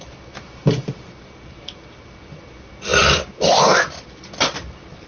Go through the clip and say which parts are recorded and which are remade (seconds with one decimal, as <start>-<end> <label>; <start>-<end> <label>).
0.0-5.1 remade

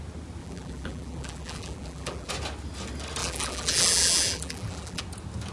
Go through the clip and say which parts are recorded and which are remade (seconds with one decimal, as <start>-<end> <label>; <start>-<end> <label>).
0.0-0.4 recorded; 0.4-2.3 remade; 2.3-3.2 recorded; 3.2-5.0 remade; 5.0-5.5 recorded

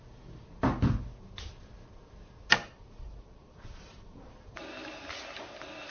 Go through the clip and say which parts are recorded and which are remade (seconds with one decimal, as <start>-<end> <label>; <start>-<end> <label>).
0.0-2.6 recorded; 2.6-4.5 remade; 4.5-5.9 recorded

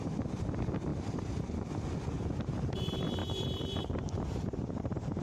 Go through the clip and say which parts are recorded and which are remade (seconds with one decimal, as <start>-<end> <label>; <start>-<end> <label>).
0.0-0.9 recorded; 0.9-1.7 remade; 1.7-3.2 recorded; 3.2-5.2 remade

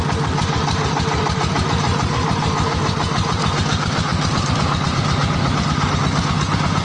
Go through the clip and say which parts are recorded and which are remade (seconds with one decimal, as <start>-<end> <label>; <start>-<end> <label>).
0.0-1.9 recorded; 1.9-3.6 remade; 3.6-4.1 recorded; 4.1-5.9 remade; 5.9-6.8 recorded